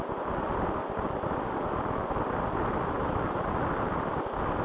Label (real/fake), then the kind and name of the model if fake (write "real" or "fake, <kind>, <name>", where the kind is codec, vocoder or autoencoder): real